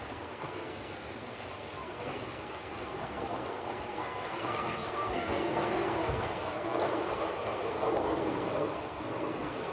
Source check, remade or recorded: remade